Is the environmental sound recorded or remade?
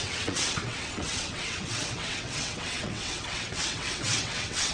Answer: remade